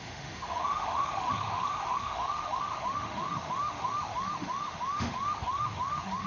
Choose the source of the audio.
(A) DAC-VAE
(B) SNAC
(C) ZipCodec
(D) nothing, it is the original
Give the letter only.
A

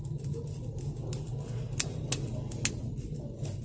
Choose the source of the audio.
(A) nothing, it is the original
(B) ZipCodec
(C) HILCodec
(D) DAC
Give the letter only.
A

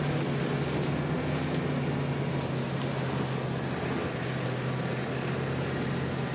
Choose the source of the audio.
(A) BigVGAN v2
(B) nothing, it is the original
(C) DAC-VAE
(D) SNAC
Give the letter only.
B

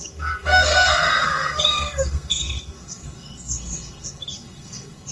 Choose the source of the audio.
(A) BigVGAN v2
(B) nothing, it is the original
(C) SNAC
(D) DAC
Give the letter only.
C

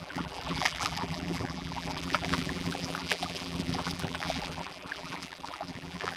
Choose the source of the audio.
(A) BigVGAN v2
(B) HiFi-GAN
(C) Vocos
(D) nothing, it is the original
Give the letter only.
A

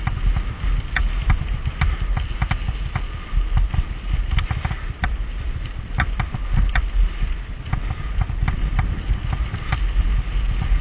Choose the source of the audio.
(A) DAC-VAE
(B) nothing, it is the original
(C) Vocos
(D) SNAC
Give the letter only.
B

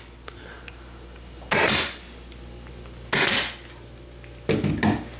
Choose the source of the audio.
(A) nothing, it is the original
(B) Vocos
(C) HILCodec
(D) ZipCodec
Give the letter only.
A